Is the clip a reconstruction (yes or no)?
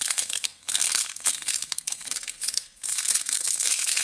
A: yes